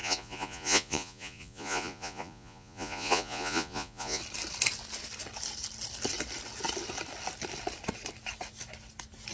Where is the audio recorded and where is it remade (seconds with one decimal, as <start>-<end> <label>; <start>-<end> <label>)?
0.0-4.2 remade; 4.2-9.3 recorded